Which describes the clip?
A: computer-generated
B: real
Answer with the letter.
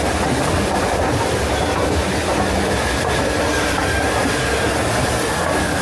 B